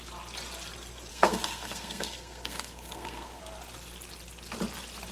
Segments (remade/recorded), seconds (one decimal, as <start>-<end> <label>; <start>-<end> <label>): 0.0-1.1 recorded; 1.1-3.4 remade; 3.4-5.1 recorded